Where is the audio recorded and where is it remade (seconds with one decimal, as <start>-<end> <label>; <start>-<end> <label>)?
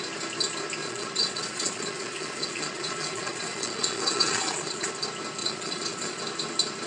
0.0-0.8 recorded; 0.8-4.9 remade; 4.9-5.4 recorded; 5.4-6.2 remade; 6.2-6.9 recorded